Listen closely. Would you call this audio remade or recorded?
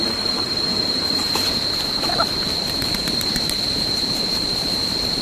remade